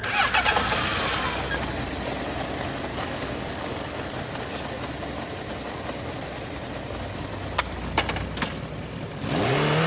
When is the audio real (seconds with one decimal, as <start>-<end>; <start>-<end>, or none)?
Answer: 0.0-2.9; 4.2-9.9